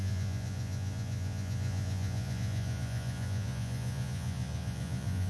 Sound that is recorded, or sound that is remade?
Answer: remade